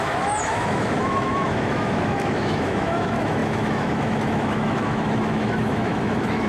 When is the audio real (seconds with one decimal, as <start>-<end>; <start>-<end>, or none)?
none